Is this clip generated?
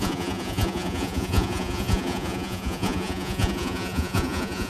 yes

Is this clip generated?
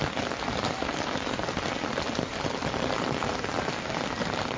no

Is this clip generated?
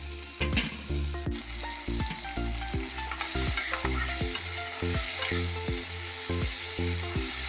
no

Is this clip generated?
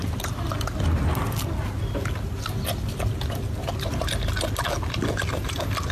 no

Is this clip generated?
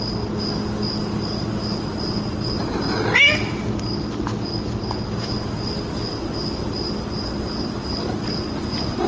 no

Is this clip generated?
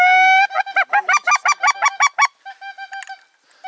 no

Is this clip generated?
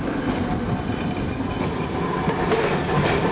no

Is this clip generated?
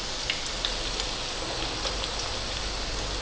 no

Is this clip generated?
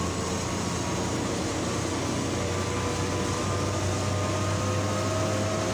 no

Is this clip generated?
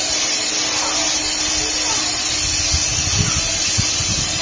no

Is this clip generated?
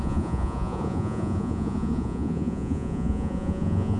yes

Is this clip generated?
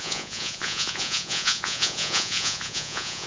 yes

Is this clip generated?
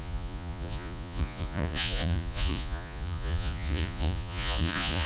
yes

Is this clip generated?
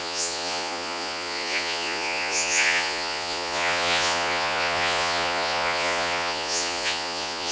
yes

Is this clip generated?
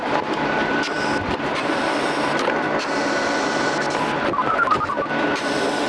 no